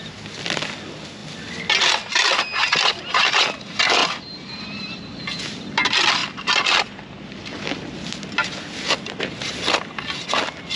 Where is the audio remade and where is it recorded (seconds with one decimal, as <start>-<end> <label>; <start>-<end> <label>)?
0.0-4.0 recorded; 4.0-4.6 remade; 4.6-10.8 recorded